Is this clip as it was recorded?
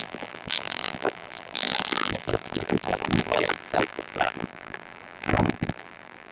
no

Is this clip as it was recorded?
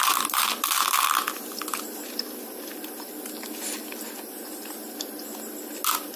yes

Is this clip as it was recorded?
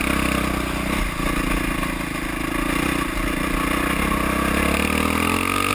yes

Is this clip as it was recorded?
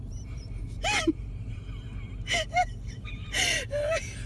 no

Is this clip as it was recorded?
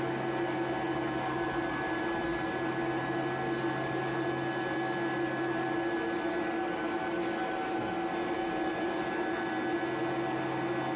yes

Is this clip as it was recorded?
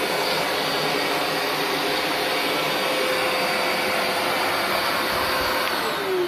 yes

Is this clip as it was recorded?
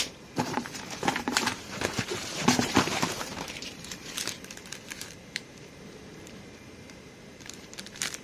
no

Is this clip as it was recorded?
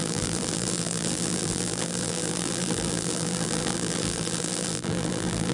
no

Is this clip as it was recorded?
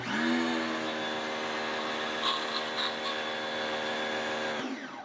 yes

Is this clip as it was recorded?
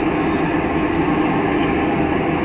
yes